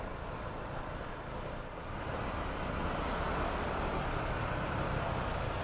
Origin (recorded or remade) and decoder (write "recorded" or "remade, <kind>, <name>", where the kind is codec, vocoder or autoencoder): recorded